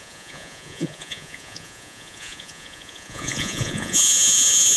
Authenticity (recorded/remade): remade